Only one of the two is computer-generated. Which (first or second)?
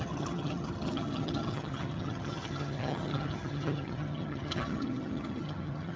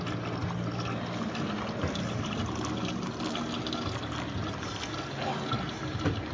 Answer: first